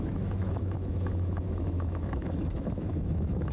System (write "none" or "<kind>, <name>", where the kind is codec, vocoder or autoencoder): autoencoder, DAC-VAE